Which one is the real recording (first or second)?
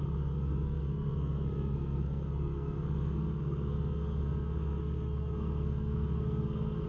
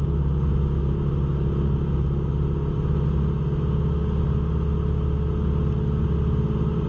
second